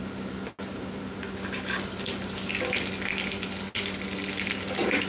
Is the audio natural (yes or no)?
yes